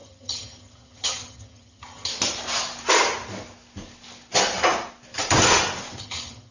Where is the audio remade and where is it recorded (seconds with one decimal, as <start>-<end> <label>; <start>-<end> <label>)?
0.0-2.1 remade; 2.1-6.0 recorded; 6.0-6.5 remade